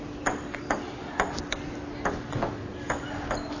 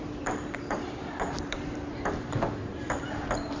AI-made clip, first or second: second